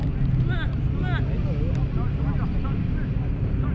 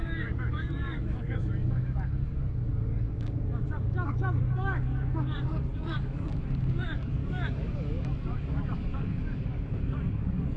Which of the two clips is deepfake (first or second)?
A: second